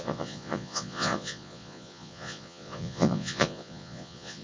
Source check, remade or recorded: remade